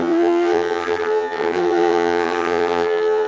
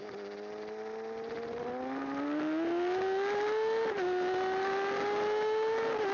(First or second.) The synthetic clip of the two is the first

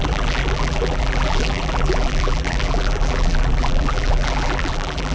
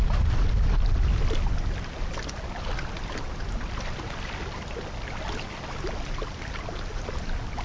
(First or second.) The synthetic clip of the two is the first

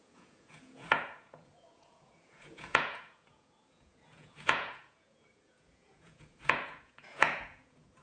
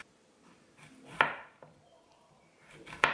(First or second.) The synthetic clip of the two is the first